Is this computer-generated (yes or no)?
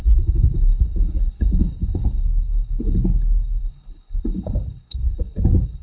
yes